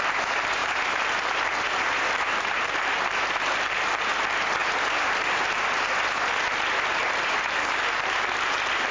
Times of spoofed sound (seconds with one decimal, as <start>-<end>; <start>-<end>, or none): 0.6-2.8; 4.6-5.4; 6.9-7.8